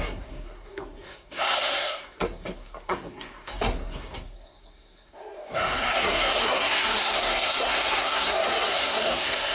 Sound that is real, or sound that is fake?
fake